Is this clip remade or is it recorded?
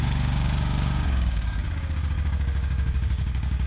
remade